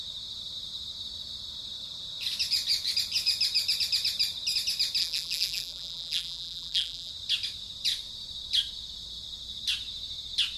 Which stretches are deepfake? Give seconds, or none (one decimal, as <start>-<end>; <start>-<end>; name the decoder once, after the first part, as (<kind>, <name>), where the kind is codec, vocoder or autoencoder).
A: 5.0-7.1 (vocoder, BigVGAN v2)